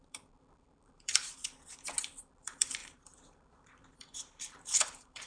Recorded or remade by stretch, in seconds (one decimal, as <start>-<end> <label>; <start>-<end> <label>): 0.0-1.4 remade; 1.4-2.0 recorded; 2.0-5.3 remade